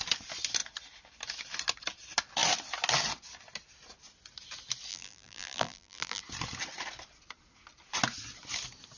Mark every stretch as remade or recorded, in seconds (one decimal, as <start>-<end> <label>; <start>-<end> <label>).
0.0-4.9 recorded; 4.9-6.2 remade; 6.2-9.0 recorded